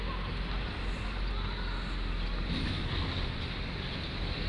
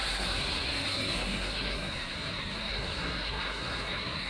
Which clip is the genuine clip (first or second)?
first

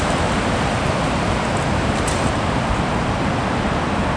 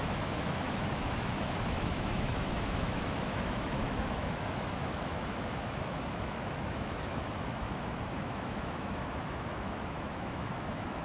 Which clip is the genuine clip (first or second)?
first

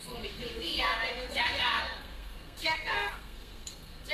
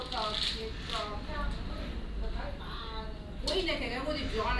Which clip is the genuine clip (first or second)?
second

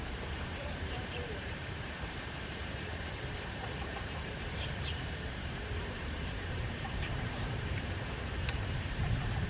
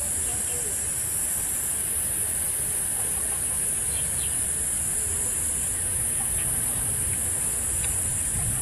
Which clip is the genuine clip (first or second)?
second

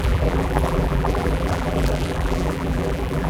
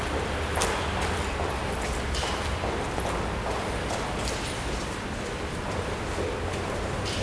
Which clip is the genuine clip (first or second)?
second